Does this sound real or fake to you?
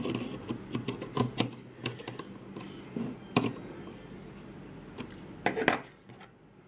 real